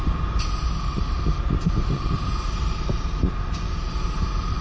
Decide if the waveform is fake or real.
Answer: fake